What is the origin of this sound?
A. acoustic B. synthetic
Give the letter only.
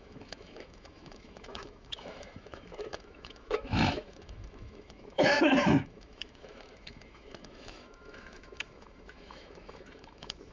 B